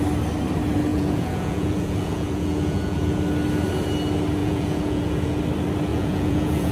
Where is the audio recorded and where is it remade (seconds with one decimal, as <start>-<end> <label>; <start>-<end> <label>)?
0.0-0.9 recorded; 0.9-3.2 remade; 3.2-4.4 recorded; 4.4-5.4 remade; 5.4-5.9 recorded; 5.9-6.7 remade